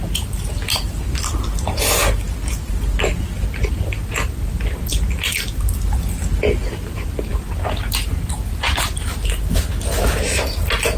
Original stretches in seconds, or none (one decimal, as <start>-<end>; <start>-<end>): 0.0-11.0